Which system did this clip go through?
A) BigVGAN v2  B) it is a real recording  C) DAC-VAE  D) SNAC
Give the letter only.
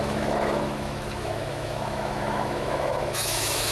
C